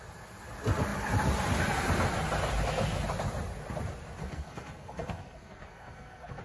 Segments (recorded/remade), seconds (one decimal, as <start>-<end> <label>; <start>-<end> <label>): 0.0-4.2 recorded; 4.2-6.4 remade